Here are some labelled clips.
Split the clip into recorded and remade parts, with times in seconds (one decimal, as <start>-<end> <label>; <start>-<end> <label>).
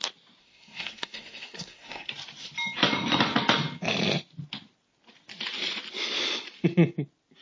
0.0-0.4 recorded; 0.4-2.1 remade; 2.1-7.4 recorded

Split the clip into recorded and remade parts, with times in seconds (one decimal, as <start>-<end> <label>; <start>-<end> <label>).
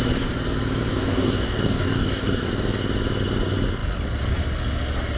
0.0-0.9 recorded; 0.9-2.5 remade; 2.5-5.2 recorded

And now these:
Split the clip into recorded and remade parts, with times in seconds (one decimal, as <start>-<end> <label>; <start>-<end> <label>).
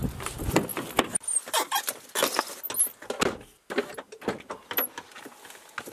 0.0-5.9 recorded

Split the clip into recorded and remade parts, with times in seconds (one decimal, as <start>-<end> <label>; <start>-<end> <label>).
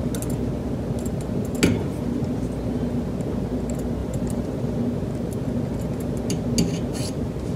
0.0-4.0 recorded; 4.0-4.8 remade; 4.8-7.6 recorded